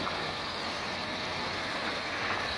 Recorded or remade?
recorded